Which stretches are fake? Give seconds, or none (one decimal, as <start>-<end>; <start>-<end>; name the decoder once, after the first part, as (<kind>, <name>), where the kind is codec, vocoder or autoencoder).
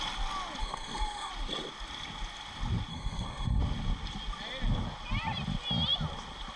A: 0.6-1.3 (codec, SNAC); 2.9-3.6